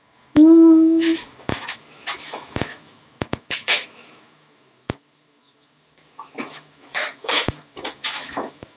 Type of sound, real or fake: fake